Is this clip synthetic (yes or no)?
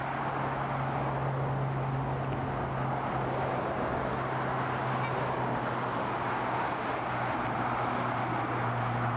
no